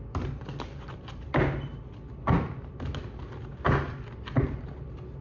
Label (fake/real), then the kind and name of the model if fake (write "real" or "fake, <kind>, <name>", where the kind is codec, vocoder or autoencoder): real